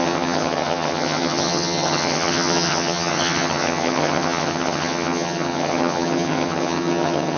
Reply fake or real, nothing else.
fake